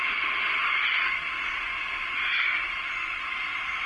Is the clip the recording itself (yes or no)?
yes